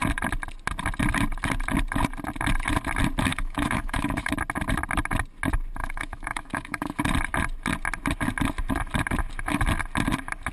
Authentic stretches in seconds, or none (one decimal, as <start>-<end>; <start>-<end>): 0.0-3.3; 4.3-5.8; 7.0-10.5